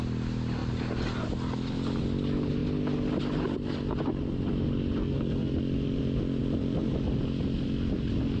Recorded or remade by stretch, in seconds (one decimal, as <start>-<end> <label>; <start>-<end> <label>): 0.0-5.0 recorded; 5.0-5.5 remade; 5.5-8.4 recorded